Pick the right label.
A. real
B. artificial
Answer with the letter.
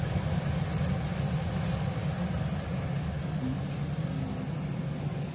A